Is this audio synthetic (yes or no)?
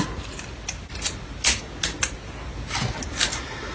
no